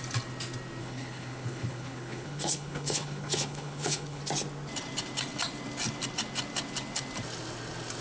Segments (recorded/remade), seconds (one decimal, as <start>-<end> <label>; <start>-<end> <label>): 0.0-0.8 recorded; 0.8-4.2 remade; 4.2-8.0 recorded